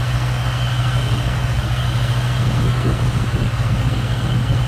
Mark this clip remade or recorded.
remade